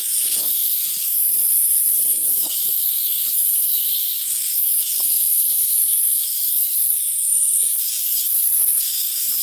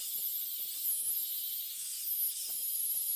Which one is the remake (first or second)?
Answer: first